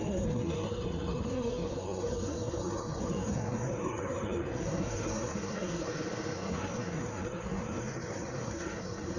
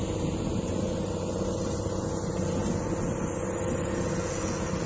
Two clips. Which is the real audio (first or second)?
second